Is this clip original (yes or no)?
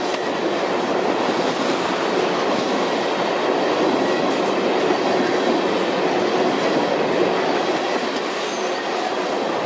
yes